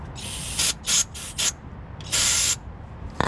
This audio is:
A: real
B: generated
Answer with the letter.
A